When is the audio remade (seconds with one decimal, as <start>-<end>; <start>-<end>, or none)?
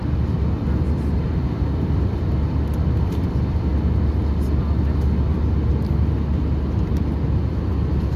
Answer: 0.0-3.7; 7.7-8.2